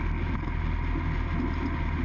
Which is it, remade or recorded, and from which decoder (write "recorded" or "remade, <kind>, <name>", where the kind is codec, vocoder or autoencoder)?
recorded